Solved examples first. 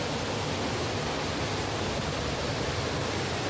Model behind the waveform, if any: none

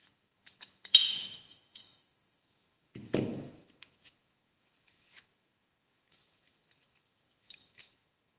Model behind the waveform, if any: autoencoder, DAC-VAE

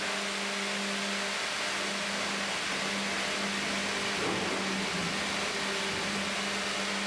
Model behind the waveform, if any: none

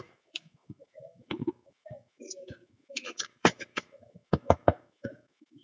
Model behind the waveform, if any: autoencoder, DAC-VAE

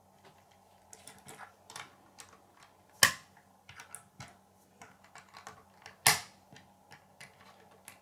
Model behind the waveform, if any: none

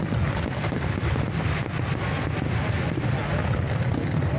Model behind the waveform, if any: none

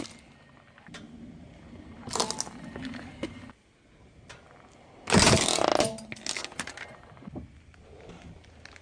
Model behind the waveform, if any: none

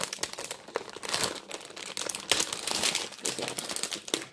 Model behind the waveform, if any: none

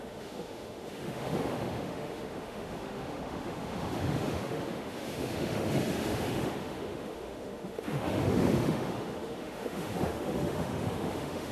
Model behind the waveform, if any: autoencoder, DAC-VAE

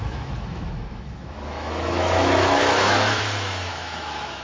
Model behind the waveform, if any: autoencoder, DAC-VAE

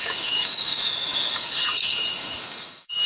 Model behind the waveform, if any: autoencoder, DAC-VAE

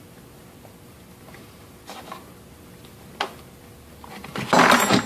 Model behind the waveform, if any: none